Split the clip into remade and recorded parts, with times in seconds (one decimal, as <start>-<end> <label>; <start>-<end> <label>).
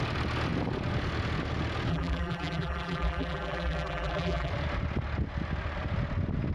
0.0-1.9 recorded; 1.9-4.5 remade; 4.5-6.5 recorded